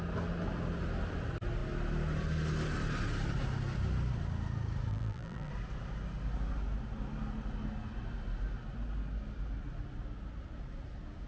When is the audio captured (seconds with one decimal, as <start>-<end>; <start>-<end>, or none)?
0.0-4.9; 5.5-11.3